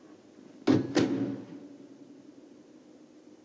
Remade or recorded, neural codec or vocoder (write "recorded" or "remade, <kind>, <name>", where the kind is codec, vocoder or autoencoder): recorded